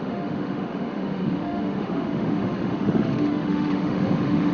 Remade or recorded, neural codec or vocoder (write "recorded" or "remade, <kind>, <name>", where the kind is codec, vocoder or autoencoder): remade, autoencoder, DAC-VAE